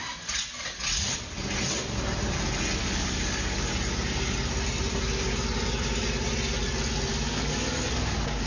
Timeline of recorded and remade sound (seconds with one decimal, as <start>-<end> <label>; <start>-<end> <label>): 0.0-2.8 recorded; 2.8-3.7 remade; 3.7-7.1 recorded; 7.1-8.5 remade